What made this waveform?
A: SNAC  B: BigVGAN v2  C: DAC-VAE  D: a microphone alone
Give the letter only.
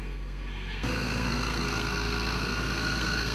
A